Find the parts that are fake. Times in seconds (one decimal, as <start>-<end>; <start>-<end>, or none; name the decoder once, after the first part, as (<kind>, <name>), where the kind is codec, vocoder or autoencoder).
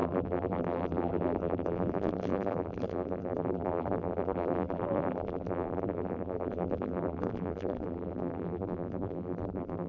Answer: 0.0-9.9 (vocoder, BigVGAN v2)